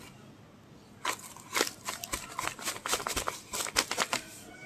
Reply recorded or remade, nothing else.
recorded